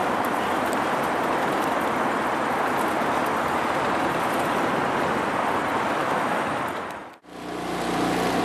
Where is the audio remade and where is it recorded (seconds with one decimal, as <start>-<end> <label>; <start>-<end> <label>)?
0.0-6.0 recorded; 6.0-6.6 remade; 6.6-8.4 recorded